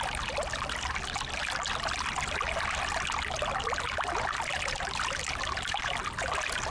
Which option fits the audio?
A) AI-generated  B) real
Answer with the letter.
B